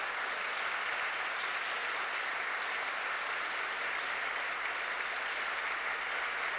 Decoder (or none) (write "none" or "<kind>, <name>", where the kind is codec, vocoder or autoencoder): none